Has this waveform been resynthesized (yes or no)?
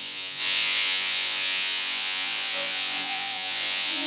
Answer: yes